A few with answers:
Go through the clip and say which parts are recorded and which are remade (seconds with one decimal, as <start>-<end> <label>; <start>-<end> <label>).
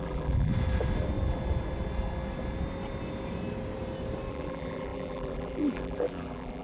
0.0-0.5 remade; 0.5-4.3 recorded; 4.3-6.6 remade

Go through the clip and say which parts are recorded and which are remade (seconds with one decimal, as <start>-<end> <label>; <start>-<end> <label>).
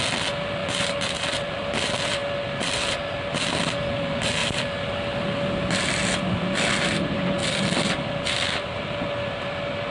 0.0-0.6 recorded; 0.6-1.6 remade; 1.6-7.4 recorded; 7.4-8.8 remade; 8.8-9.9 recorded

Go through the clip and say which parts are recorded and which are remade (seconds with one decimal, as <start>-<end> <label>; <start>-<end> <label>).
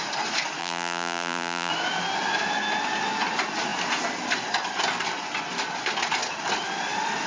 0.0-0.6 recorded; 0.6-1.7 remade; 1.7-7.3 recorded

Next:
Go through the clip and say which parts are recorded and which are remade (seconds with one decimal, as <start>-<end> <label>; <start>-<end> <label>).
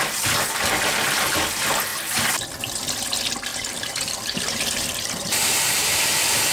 0.0-3.5 recorded; 3.5-6.1 remade; 6.1-6.5 recorded